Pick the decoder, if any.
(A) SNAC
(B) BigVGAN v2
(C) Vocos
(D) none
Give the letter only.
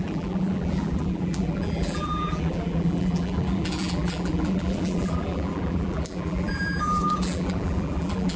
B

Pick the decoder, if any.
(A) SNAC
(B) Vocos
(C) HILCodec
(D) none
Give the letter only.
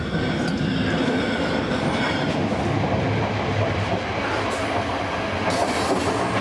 D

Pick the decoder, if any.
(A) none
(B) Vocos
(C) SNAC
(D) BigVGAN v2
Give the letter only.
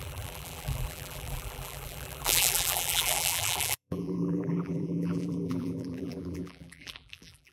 D